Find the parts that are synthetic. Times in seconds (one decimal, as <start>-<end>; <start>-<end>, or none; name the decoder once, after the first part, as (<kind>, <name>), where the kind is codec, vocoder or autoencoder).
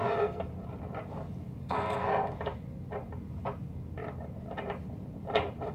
0.0-0.5 (codec, SNAC); 1.6-2.1